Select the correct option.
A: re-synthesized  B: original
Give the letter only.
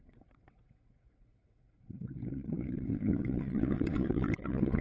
A